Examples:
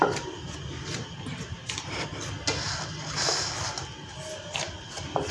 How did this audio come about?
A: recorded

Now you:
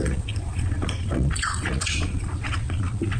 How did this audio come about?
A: remade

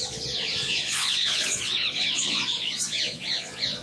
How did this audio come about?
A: remade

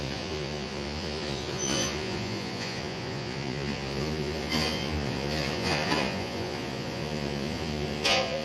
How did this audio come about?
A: remade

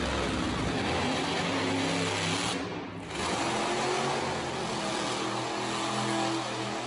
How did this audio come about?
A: recorded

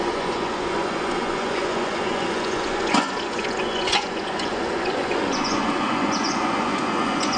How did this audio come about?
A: remade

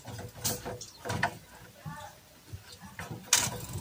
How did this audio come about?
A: recorded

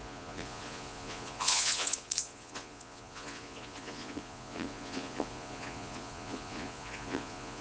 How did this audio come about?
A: remade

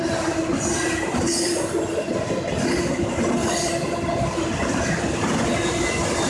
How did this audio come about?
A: recorded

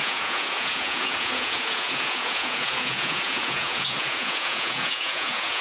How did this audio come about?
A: remade